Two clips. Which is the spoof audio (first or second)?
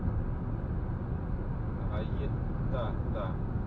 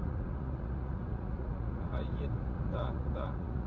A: second